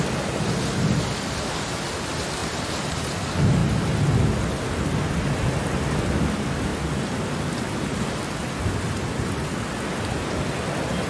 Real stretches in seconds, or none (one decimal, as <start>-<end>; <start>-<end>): 0.0-2.4; 3.0-6.7; 8.6-11.1